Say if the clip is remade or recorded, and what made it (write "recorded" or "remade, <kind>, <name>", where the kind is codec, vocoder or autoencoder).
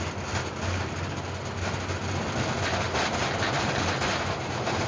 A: recorded